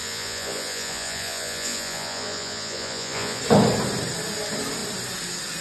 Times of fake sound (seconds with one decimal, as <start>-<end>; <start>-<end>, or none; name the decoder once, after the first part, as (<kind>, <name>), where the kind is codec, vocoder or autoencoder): 0.0-3.4 (vocoder, Vocos)